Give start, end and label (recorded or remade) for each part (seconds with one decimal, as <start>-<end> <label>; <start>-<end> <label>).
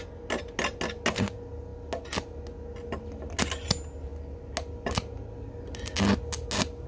0.0-6.9 recorded